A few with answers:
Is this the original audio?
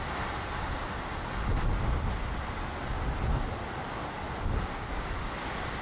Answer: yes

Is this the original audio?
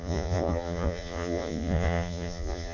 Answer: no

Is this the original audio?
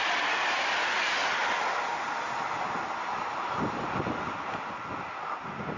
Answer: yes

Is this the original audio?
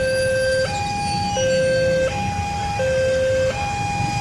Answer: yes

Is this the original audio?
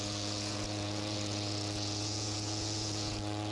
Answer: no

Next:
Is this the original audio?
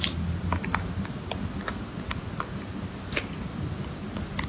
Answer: yes